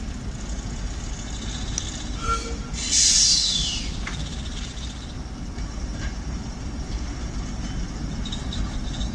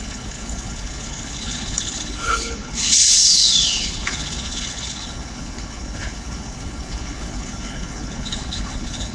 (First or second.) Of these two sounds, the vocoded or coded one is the second